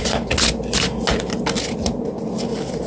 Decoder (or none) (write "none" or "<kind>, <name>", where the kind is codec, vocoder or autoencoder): none